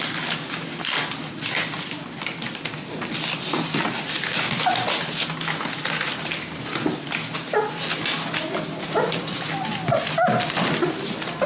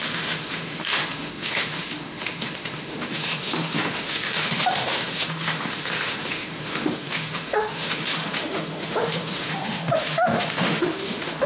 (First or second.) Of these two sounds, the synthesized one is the second